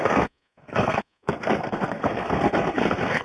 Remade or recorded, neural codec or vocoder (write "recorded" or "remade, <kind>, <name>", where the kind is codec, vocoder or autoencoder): remade, codec, SNAC